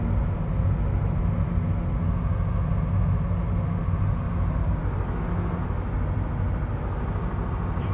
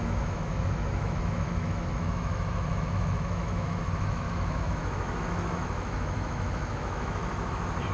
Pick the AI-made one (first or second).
second